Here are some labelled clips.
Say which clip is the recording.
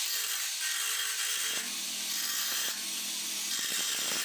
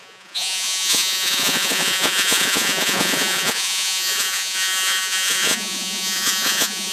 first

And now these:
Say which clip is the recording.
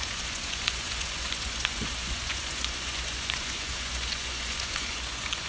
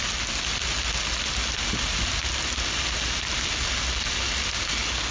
second